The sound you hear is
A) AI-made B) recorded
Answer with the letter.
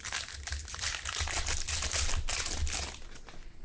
B